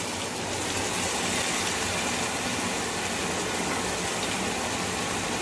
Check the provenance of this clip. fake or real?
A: real